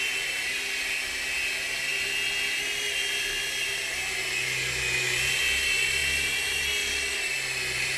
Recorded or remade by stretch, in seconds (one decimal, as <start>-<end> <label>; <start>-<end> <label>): 0.0-8.0 recorded